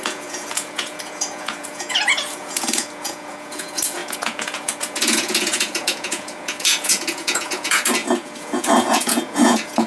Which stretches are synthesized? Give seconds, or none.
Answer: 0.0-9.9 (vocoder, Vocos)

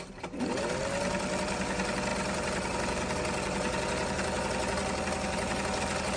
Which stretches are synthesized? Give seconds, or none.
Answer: none

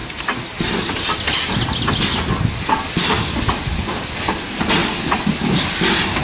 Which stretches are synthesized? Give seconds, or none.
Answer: none

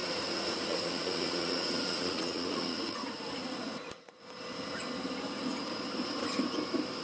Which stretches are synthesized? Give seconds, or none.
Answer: 0.0-4.2 (vocoder, Vocos)

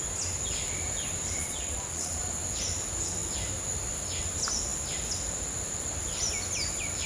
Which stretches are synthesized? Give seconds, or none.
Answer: 1.4-2.2 (vocoder, Vocos)

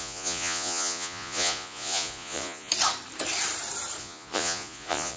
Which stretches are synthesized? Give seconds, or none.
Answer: 0.0-2.7 (vocoder, Vocos); 4.0-5.2

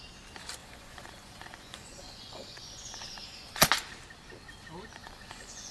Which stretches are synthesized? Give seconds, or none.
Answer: 0.6-3.7 (vocoder, Vocos); 5.0-5.7

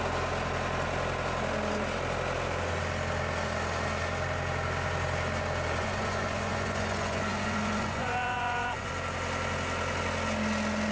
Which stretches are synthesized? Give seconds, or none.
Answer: 5.8-8.9 (vocoder, Vocos)